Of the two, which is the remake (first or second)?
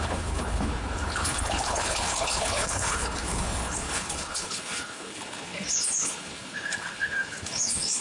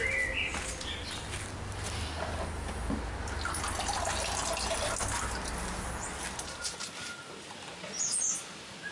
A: first